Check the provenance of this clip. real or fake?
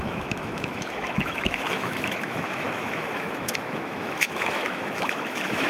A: fake